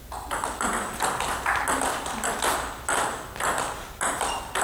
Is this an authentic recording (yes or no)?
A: yes